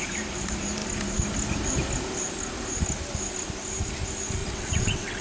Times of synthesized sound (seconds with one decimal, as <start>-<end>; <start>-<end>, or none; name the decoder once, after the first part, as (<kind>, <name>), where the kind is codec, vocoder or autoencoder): 4.4-5.2 (vocoder, WaveNeXt)